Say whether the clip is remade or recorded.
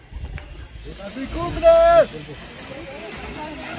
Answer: recorded